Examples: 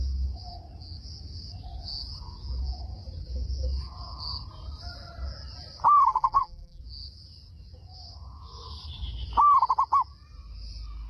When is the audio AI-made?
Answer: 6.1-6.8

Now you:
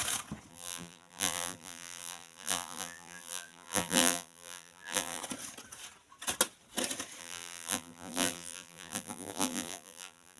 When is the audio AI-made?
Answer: 0.5-5.2; 7.2-10.4

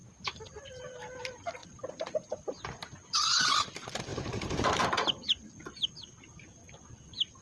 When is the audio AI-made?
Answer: 0.0-1.2; 4.1-5.5

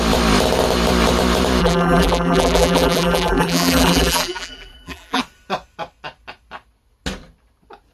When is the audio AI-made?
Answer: 1.6-5.2

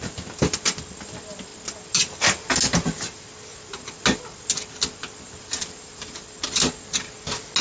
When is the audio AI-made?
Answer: none